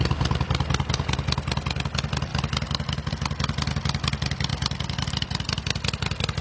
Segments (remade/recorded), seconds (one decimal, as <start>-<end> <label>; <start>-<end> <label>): 0.0-6.4 recorded